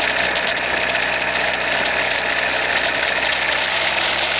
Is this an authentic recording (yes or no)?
yes